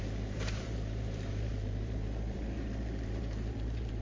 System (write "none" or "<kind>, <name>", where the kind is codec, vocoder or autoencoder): vocoder, BigVGAN v2